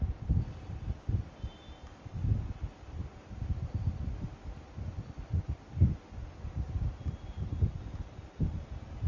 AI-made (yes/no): no